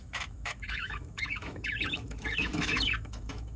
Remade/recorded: remade